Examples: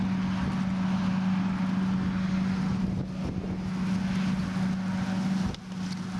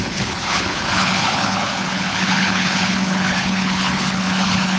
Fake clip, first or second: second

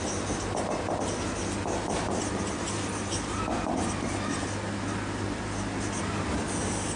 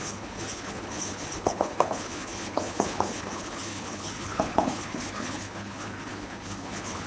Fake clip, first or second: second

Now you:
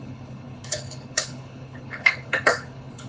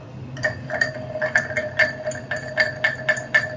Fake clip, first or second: first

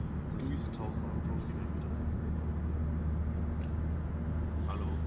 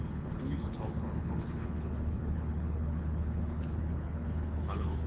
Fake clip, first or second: second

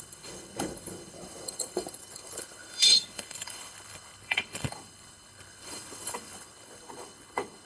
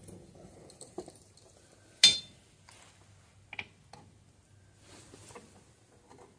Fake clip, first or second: first